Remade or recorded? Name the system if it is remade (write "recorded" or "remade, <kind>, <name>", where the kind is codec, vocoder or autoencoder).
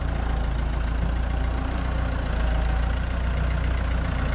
recorded